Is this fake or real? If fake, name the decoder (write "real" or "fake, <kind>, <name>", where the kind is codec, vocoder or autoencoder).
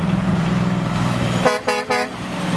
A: real